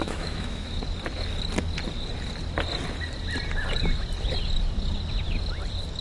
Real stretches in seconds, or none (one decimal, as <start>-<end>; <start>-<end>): 0.8-6.0